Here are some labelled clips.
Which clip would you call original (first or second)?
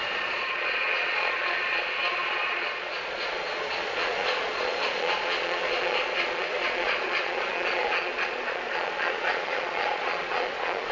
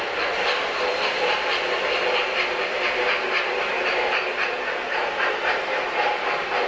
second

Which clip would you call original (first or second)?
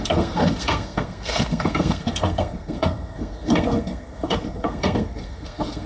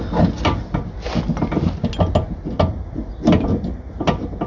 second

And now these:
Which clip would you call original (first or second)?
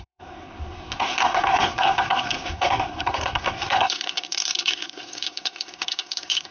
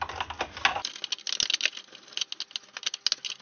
second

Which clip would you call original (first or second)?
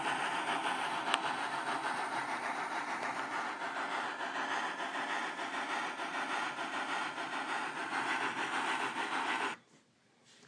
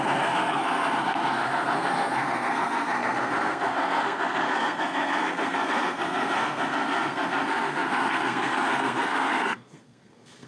first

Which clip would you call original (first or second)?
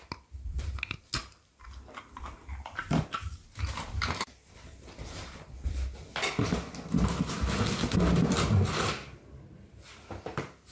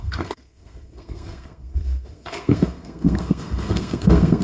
first